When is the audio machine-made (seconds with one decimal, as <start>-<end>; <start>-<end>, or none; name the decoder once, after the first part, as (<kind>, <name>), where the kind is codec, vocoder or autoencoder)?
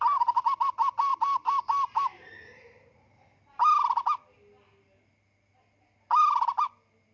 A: none